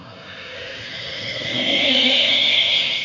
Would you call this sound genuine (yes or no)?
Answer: no